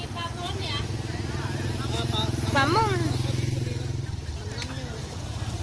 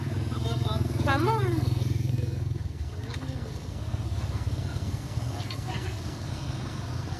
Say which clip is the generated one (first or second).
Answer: second